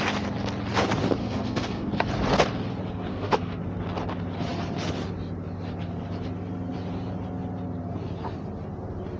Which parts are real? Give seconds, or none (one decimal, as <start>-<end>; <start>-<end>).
0.0-1.2; 1.9-3.1; 3.6-9.2